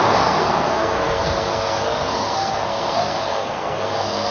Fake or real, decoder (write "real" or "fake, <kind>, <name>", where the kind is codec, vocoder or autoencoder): fake, codec, SNAC